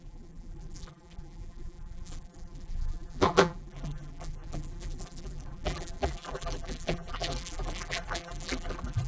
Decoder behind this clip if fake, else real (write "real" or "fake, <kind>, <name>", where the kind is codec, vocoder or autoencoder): fake, vocoder, BigVGAN v2